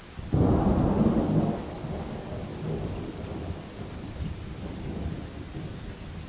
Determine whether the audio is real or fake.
real